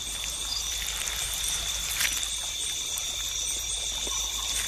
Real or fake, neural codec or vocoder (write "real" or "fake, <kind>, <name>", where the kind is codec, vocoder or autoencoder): real